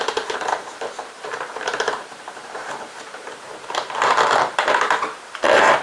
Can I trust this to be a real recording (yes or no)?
no